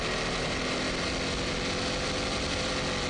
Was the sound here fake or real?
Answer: real